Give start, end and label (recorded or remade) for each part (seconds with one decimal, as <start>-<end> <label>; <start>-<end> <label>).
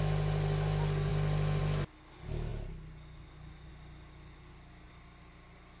0.0-5.8 recorded